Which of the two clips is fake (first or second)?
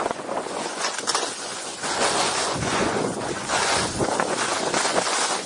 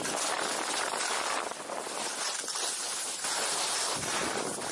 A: first